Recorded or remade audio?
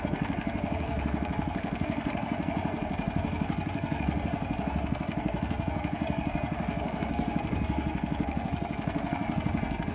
remade